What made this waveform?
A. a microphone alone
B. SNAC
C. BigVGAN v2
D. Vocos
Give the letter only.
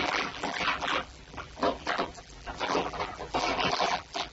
C